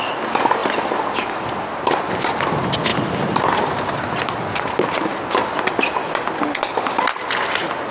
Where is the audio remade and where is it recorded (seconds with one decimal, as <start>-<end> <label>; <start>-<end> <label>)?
0.0-7.9 recorded